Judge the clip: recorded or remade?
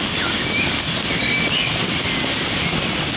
recorded